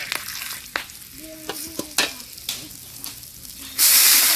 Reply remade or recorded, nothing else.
recorded